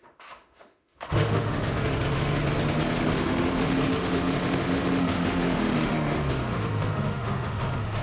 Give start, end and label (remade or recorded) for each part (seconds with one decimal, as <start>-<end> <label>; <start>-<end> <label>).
0.0-2.4 remade; 2.4-3.0 recorded; 3.0-8.0 remade